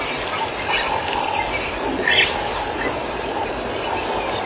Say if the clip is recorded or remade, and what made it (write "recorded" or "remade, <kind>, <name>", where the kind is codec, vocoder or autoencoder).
recorded